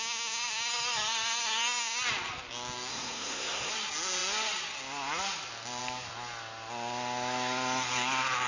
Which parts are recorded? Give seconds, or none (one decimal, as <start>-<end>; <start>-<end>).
0.0-2.9; 3.7-8.5